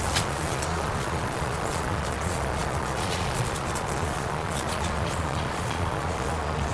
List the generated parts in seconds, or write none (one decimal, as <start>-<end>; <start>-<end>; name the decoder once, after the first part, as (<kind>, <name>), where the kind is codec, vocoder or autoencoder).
0.0-6.7 (vocoder, Vocos)